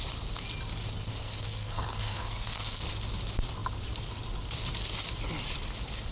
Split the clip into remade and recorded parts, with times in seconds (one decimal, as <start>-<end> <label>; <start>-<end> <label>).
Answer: 0.0-1.1 recorded; 1.1-2.8 remade; 2.8-6.1 recorded